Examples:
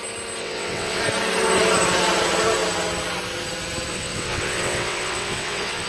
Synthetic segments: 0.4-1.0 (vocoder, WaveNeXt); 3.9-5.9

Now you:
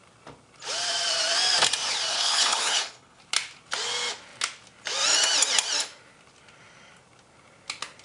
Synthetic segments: 2.1-3.2 (codec, HILCodec)